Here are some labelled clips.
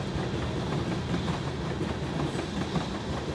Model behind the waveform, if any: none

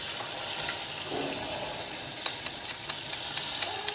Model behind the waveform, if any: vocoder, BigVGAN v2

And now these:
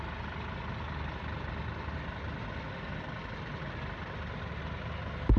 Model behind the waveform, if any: none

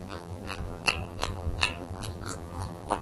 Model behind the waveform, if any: vocoder, BigVGAN v2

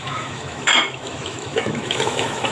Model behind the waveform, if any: autoencoder, DAC-VAE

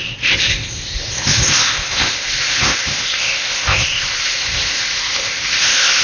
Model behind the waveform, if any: codec, ZipCodec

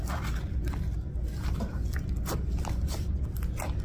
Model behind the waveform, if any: none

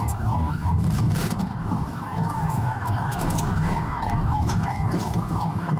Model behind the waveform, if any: codec, DAC